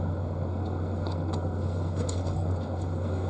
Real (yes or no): no